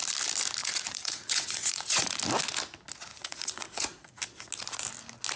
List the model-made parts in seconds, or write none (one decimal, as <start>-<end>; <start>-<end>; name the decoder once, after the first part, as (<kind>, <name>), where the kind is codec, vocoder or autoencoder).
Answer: 0.6-2.2 (vocoder, Vocos); 3.1-4.2